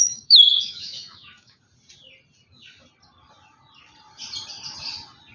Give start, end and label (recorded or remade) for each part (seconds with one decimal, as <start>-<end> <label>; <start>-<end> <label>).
0.0-1.6 remade; 1.6-5.3 recorded